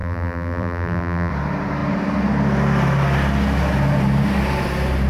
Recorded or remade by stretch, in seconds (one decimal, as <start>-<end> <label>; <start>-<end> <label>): 0.0-1.3 remade; 1.3-5.1 recorded